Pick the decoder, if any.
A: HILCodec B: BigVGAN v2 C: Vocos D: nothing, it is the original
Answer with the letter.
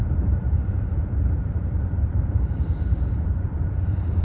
B